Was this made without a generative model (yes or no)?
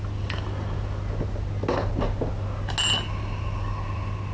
yes